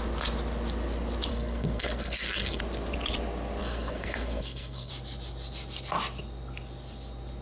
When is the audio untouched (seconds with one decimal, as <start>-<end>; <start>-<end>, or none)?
0.0-1.3; 2.6-3.6; 4.9-7.4